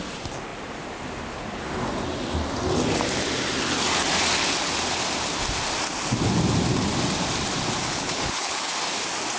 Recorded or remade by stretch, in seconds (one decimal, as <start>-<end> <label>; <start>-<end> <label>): 0.0-7.9 recorded; 7.9-8.7 remade; 8.7-9.4 recorded